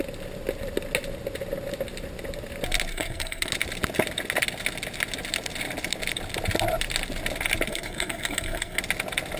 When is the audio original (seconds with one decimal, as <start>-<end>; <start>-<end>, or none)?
0.0-2.9; 3.5-7.7; 8.8-9.4

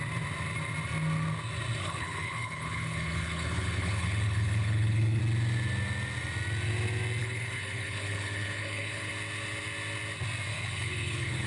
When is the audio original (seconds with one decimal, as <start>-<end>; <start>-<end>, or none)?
0.0-1.8; 5.2-7.2; 9.1-10.5

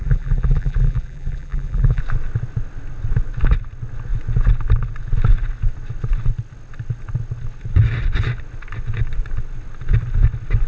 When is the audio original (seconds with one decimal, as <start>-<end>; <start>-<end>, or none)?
2.0-10.7

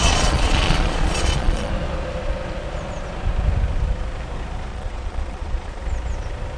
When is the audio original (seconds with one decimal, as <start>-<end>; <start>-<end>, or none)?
1.7-4.7; 5.8-6.6

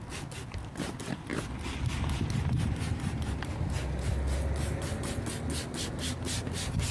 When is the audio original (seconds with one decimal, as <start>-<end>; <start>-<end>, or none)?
0.0-6.9